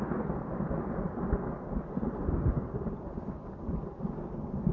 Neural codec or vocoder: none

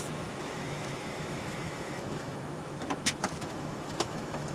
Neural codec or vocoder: autoencoder, DAC-VAE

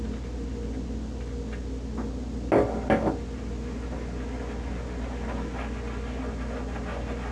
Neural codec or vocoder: none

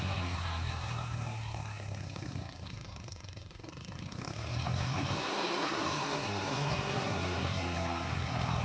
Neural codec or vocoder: codec, SNAC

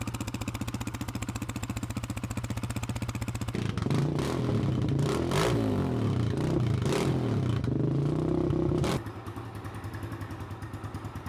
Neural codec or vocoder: none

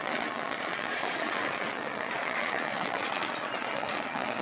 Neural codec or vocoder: vocoder, Vocos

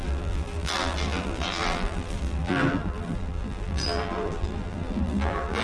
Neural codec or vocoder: vocoder, BigVGAN v2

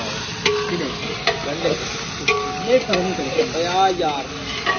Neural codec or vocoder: none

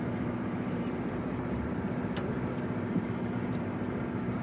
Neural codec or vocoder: vocoder, BigVGAN v2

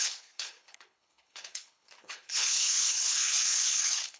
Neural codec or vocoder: codec, HILCodec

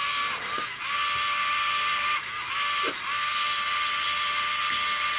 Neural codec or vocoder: none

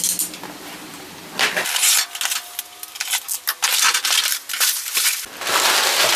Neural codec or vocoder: none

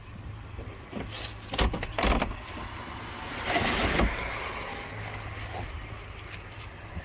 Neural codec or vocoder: none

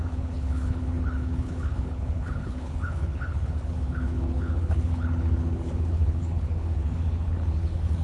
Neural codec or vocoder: codec, HILCodec